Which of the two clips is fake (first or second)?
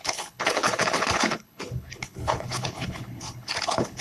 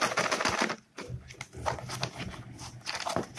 first